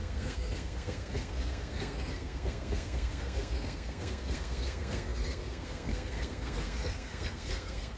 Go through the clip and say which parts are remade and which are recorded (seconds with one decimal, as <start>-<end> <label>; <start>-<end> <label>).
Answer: 0.0-8.0 remade